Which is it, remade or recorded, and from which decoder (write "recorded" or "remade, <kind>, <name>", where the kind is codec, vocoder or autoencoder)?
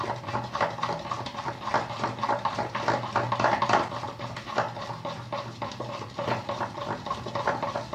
recorded